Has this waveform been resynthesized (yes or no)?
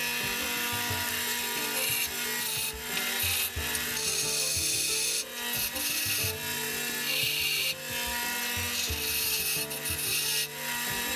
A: no